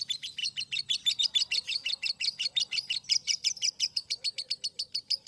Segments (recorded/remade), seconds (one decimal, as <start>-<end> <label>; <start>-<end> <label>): 0.0-5.3 recorded